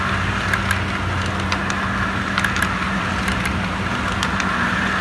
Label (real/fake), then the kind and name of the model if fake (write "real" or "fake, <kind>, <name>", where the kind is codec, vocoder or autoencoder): real